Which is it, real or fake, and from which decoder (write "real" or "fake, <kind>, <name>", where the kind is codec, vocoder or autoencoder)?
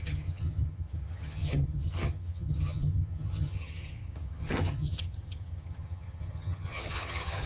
fake, vocoder, HiFi-GAN